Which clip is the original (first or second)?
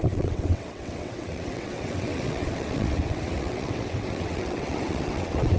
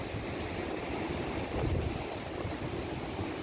second